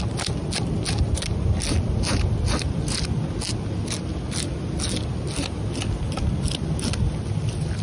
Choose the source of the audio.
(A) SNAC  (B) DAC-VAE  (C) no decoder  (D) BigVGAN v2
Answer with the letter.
C